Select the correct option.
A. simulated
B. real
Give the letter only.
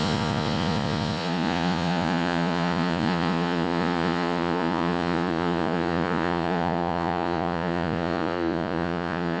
A